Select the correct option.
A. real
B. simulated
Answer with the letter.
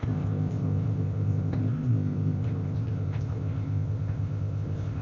B